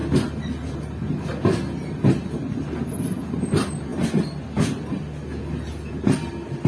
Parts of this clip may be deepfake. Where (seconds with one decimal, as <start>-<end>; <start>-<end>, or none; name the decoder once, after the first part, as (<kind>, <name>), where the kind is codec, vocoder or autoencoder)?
none